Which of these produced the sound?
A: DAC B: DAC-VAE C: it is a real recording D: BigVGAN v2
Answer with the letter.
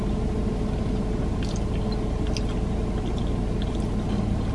C